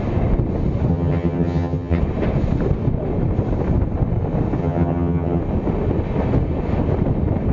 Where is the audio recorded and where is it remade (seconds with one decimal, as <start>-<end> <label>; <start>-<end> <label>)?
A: 0.0-0.9 recorded; 0.9-2.0 remade; 2.0-4.6 recorded; 4.6-5.4 remade; 5.4-7.5 recorded